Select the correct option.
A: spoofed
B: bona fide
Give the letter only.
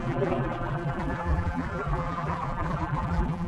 A